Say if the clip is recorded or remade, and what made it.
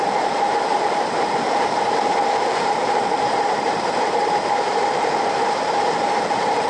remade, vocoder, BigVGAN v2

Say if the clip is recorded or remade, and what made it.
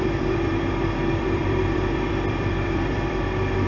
remade, vocoder, BigVGAN v2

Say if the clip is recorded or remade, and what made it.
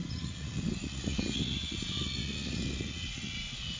remade, vocoder, Vocos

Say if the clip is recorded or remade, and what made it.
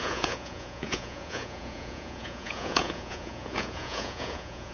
remade, vocoder, Vocos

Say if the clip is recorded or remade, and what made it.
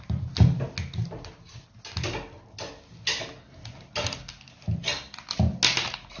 recorded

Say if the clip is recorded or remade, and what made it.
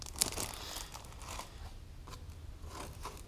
recorded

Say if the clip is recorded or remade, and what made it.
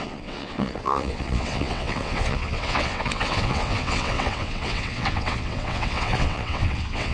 remade, vocoder, WaveNeXt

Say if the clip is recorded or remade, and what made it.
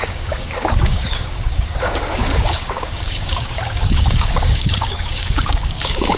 remade, codec, DAC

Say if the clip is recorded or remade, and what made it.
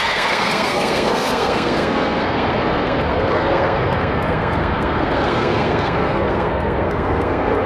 remade, codec, SNAC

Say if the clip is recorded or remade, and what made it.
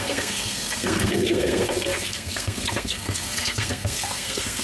remade, codec, SNAC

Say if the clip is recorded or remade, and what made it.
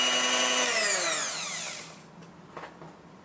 recorded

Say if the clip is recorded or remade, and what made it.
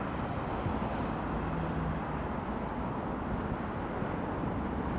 remade, vocoder, BigVGAN v2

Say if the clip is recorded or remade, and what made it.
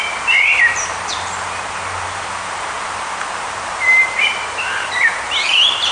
remade, vocoder, BigVGAN v2